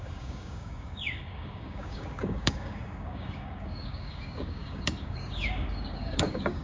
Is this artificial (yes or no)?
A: yes